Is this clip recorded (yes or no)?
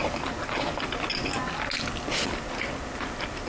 yes